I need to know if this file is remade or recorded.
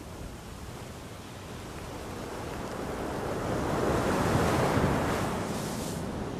recorded